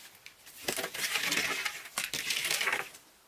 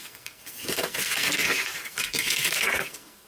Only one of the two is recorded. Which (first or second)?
first